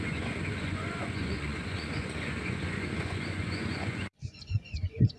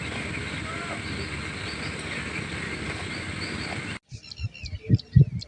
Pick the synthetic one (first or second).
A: first